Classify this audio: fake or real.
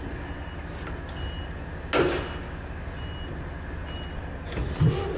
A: real